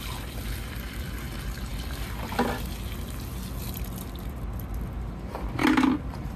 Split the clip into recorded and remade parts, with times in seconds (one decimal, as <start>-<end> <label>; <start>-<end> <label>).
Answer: 0.0-6.4 recorded